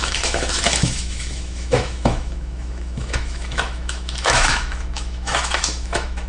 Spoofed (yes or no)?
yes